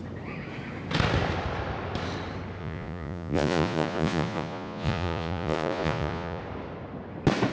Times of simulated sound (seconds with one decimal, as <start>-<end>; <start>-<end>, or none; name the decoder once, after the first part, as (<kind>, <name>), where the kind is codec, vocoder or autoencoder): 2.6-6.4 (vocoder, Vocos)